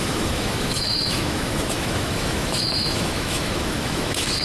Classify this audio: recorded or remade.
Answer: remade